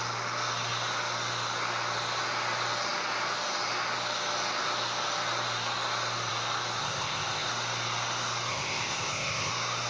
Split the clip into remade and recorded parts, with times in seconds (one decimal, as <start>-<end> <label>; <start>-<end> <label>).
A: 0.0-6.8 recorded; 6.8-7.5 remade; 7.5-8.5 recorded; 8.5-9.5 remade; 9.5-9.9 recorded

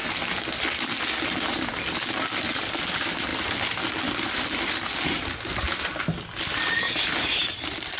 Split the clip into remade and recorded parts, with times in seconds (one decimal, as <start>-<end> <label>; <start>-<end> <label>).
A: 0.0-8.0 recorded

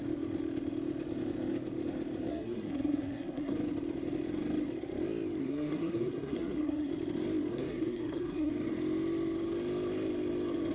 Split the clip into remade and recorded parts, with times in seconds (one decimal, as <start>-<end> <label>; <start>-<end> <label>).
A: 0.0-2.3 recorded; 2.3-3.5 remade; 3.5-5.4 recorded; 5.4-6.9 remade; 6.9-7.5 recorded; 7.5-8.5 remade; 8.5-10.7 recorded

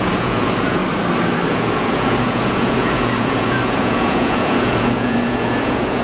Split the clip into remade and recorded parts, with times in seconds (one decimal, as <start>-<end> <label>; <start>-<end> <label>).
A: 0.0-0.8 remade; 0.8-1.5 recorded; 1.5-6.0 remade